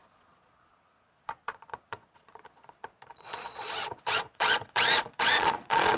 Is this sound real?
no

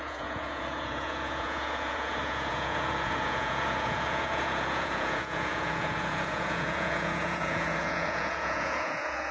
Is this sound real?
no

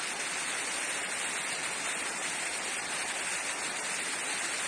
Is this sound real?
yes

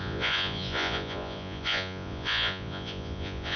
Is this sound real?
no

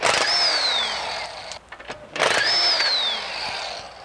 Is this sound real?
yes